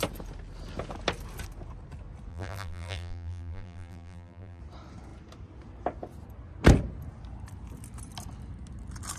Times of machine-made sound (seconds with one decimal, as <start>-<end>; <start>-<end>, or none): 2.3-4.6